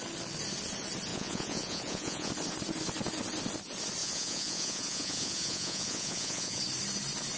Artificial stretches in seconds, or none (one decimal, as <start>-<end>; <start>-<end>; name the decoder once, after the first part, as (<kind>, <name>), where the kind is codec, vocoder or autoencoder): 1.1-2.3 (vocoder, Vocos); 4.0-6.6